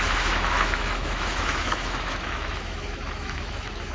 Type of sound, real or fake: fake